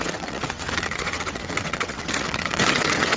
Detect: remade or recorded remade